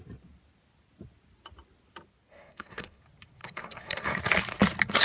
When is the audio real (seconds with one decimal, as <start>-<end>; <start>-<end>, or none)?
0.0-2.3; 3.0-3.4; 4.2-5.0